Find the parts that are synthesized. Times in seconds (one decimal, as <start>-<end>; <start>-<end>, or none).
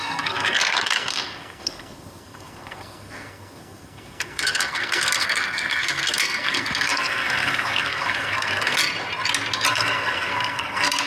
0.0-8.8; 9.7-11.1